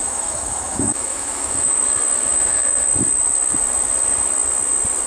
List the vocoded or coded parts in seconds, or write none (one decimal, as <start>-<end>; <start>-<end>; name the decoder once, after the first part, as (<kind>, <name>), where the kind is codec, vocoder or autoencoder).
0.0-1.8 (autoencoder, DAC-VAE); 2.3-2.9